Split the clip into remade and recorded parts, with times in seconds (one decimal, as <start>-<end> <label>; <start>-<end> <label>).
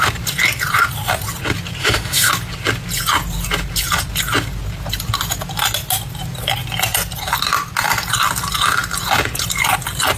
0.0-1.8 recorded; 1.8-2.3 remade; 2.3-10.2 recorded